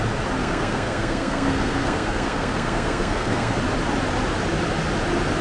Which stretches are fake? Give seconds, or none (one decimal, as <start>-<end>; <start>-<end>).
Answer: 0.4-3.6